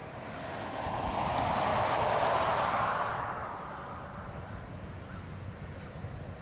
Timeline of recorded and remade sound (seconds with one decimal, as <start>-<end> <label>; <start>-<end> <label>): 0.0-6.4 recorded